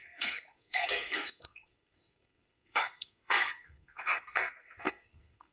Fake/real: fake